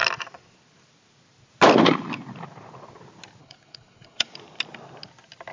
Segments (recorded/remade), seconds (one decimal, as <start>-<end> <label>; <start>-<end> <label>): 0.0-3.4 recorded; 3.4-4.3 remade; 4.3-5.5 recorded